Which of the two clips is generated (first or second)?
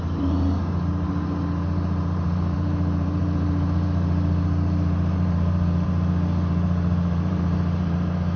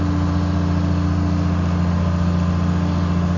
first